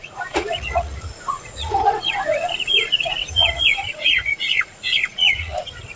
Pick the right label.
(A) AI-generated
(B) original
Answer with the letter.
A